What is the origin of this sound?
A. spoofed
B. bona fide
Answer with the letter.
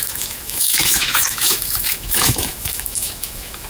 A